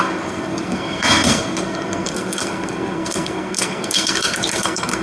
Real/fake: fake